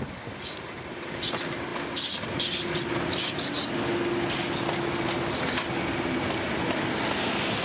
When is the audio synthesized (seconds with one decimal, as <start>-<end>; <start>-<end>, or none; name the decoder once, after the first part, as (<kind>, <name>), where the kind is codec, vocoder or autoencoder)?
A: none